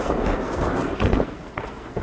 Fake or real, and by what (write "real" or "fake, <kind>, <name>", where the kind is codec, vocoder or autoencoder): fake, codec, SNAC